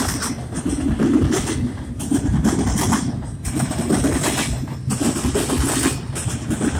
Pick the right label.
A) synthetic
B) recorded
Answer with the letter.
B